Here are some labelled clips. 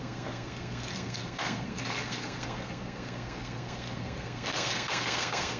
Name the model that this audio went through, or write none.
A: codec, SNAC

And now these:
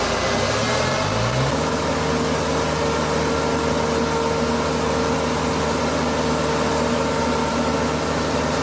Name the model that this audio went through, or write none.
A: none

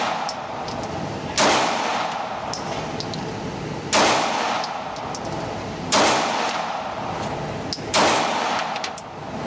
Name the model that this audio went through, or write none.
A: none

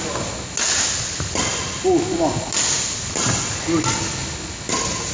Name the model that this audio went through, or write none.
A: none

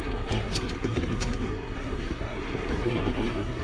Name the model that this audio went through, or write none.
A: codec, SNAC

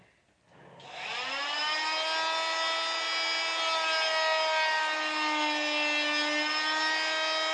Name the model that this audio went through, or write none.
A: none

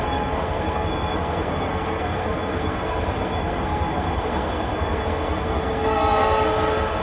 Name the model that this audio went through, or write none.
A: codec, SNAC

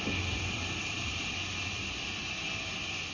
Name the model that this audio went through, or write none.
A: none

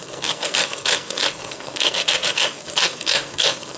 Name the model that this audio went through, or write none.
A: codec, SNAC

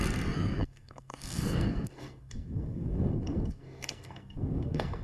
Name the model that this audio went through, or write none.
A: codec, SNAC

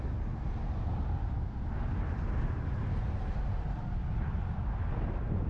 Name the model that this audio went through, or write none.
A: none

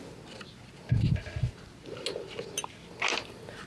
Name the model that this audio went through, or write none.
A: none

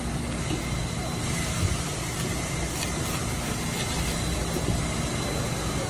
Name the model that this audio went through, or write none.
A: none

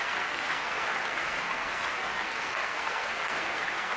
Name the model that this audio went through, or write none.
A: codec, SNAC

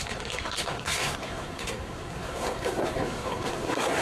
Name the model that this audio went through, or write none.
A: codec, SNAC